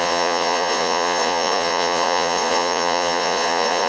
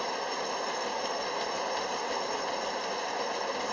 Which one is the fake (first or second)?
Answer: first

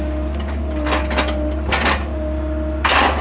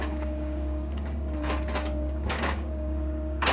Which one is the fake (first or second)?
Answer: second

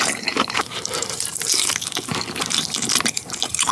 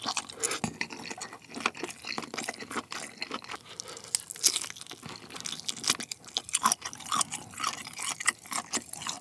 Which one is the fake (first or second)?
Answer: first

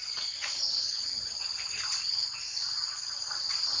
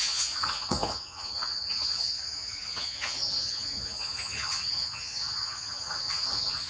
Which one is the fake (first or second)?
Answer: second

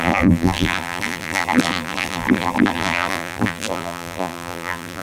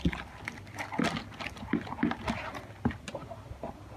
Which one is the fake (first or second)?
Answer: first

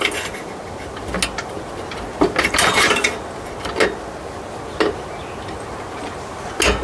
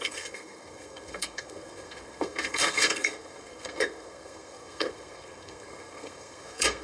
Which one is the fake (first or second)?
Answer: second